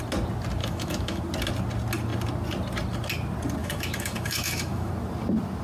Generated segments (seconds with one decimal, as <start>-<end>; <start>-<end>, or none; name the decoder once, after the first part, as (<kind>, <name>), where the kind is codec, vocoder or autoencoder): 0.6-1.2 (autoencoder, DAC-VAE); 3.6-4.9